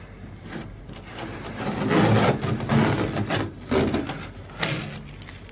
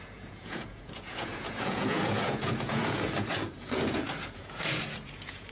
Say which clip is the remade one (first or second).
second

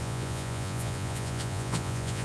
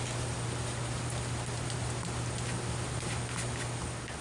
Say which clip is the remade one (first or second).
first